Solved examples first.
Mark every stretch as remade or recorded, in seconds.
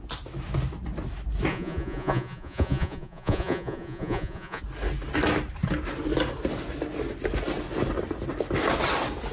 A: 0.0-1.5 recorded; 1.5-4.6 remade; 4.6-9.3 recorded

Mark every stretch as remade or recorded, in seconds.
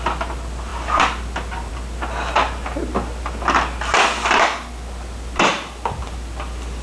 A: 0.0-6.8 recorded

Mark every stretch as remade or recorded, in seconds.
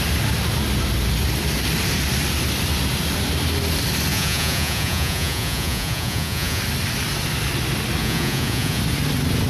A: 0.0-4.1 recorded; 4.1-6.6 remade; 6.6-8.0 recorded; 8.0-8.8 remade; 8.8-9.5 recorded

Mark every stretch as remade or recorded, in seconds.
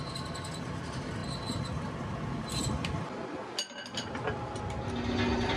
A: 0.0-5.6 recorded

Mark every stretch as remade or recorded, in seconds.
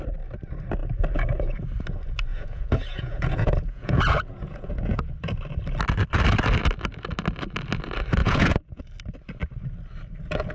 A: 0.0-2.3 recorded; 2.3-5.0 remade; 5.0-8.2 recorded; 8.2-8.8 remade; 8.8-10.5 recorded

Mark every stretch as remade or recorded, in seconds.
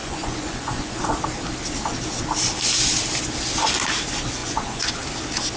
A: 0.0-1.0 remade; 1.0-4.4 recorded; 4.4-4.9 remade; 4.9-5.6 recorded